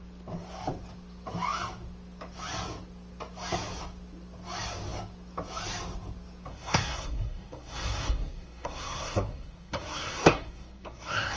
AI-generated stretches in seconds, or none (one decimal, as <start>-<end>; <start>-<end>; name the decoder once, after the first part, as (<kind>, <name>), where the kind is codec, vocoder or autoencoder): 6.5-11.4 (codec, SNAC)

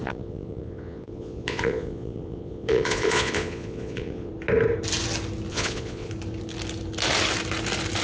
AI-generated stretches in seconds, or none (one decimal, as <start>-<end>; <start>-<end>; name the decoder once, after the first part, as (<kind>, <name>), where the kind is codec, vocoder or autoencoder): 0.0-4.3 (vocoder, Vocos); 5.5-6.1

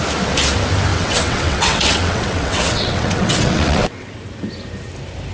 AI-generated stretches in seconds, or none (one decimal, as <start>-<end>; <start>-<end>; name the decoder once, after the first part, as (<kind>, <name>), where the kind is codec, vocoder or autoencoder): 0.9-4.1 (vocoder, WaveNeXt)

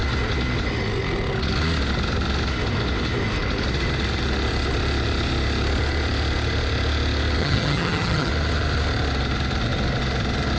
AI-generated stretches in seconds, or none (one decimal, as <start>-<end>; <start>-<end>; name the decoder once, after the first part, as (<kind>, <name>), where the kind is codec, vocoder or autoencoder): 7.4-8.3 (vocoder, HiFi-GAN)

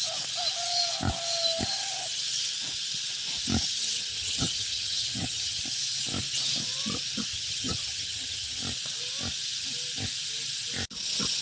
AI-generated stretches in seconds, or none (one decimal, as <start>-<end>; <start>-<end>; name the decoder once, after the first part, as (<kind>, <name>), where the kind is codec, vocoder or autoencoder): 4.1-5.6 (vocoder, HiFi-GAN); 7.3-8.6

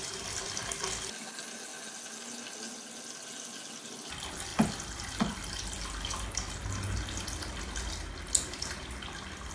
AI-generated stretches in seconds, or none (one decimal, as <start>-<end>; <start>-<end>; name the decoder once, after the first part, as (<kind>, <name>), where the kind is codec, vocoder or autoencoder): none

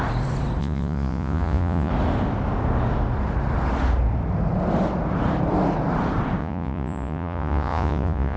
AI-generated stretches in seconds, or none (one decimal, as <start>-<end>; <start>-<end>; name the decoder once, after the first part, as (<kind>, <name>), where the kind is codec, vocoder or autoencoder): 0.6-1.9 (vocoder, Vocos); 6.4-8.4

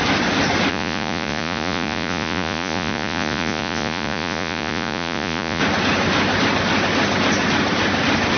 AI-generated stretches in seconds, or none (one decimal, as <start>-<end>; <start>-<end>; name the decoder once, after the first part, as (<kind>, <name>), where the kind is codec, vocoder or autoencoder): 0.7-5.6 (vocoder, Vocos)